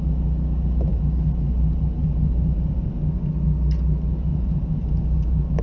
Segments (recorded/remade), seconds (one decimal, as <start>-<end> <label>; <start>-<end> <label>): 0.0-0.9 recorded; 0.9-2.9 remade; 2.9-4.3 recorded; 4.3-5.6 remade

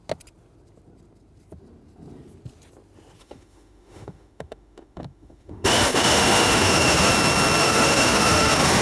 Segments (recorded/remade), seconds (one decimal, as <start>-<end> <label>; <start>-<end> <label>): 0.0-3.2 recorded; 3.2-7.1 remade; 7.1-7.6 recorded; 7.6-8.8 remade

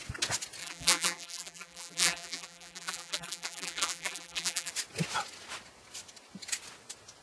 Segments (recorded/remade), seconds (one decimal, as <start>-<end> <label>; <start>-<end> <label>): 0.0-0.6 recorded; 0.6-4.7 remade; 4.7-7.2 recorded

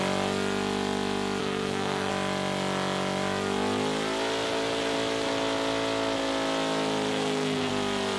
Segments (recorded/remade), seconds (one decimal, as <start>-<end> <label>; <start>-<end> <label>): 0.0-1.4 recorded; 1.4-2.1 remade; 2.1-7.1 recorded; 7.1-7.7 remade; 7.7-8.2 recorded

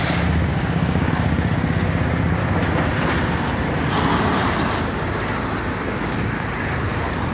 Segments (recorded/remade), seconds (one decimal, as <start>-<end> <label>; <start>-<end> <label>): 0.0-0.5 recorded; 0.5-1.1 remade; 1.1-7.3 recorded

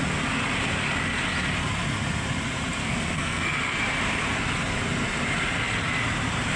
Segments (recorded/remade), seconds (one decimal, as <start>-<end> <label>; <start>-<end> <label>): 0.0-2.8 recorded; 2.8-3.8 remade; 3.8-6.6 recorded

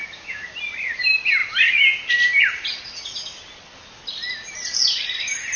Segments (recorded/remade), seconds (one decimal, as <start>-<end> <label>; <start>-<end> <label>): 0.0-0.5 remade; 0.5-5.6 recorded

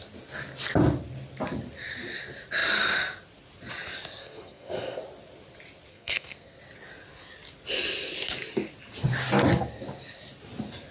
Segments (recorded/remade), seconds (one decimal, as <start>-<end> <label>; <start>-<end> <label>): 0.0-4.2 recorded; 4.2-5.0 remade; 5.0-5.9 recorded; 5.9-6.6 remade; 6.6-10.9 recorded